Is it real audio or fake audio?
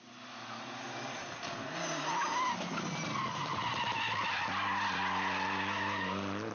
real